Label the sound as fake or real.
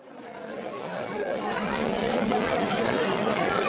fake